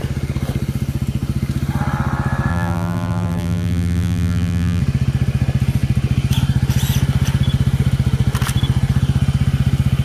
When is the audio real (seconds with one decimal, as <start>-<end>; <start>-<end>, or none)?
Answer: 0.0-2.5; 4.8-10.0

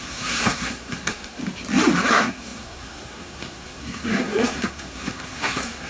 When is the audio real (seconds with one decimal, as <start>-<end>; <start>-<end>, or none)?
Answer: 1.4-2.1

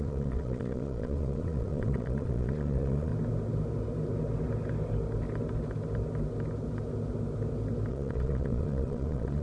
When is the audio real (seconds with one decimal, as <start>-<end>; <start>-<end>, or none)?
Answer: 3.1-7.9